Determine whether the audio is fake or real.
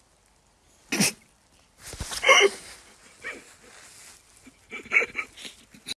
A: real